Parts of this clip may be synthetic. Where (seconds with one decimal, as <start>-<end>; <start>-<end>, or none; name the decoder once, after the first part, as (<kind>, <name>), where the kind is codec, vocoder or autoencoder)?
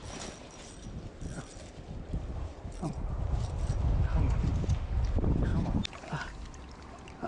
0.4-2.9 (vocoder, BigVGAN v2); 4.5-5.6